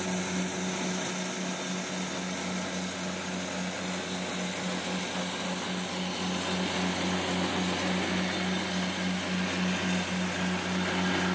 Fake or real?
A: real